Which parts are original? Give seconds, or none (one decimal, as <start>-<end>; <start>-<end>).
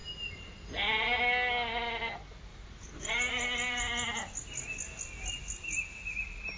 0.6-2.5; 4.2-6.6